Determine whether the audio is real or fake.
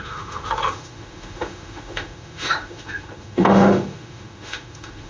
fake